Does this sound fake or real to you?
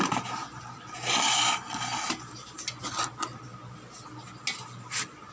real